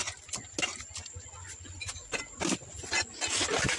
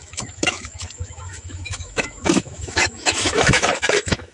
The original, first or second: first